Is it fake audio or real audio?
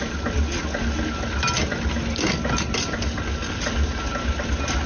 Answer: real